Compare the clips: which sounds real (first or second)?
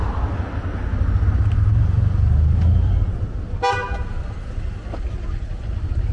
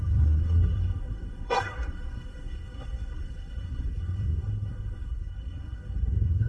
first